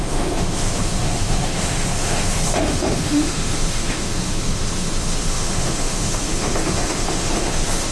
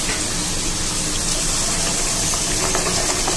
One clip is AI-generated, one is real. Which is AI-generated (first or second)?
first